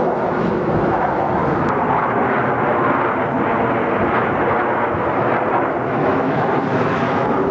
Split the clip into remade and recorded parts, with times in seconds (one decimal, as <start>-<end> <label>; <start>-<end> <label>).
0.0-1.4 remade; 1.4-5.9 recorded; 5.9-7.5 remade